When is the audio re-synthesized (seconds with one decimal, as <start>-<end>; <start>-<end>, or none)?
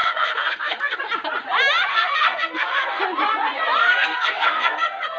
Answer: 0.0-1.0; 1.9-3.0; 3.8-5.2